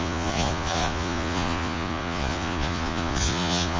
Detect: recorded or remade remade